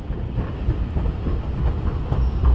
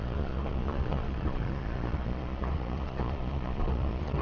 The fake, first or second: second